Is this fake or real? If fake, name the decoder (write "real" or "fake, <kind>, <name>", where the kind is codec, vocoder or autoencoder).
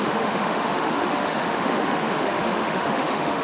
fake, autoencoder, DAC-VAE